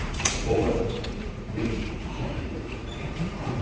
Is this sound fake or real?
fake